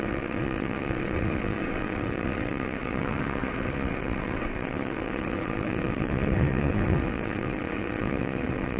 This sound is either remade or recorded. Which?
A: remade